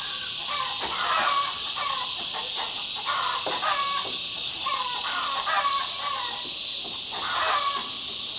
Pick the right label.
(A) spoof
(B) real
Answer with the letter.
B